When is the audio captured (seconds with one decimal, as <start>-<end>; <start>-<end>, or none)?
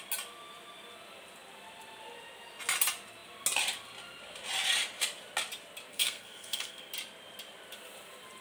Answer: 0.0-5.9; 6.9-8.4